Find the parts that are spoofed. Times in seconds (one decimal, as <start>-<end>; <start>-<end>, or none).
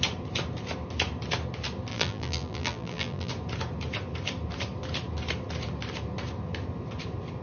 1.9-3.3